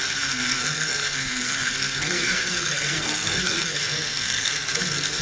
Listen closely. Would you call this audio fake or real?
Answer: fake